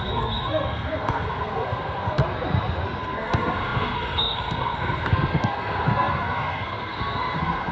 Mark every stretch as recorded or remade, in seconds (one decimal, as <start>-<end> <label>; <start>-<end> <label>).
0.0-2.2 remade; 2.2-3.0 recorded; 3.0-7.7 remade